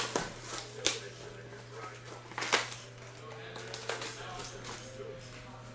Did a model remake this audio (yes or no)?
no